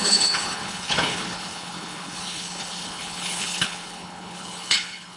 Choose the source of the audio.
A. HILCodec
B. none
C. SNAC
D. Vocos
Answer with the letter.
A